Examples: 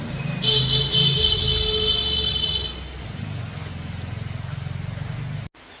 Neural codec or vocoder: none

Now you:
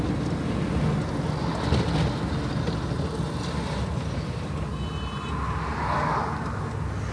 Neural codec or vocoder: none